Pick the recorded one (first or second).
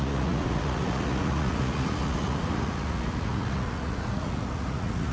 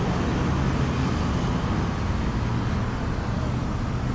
second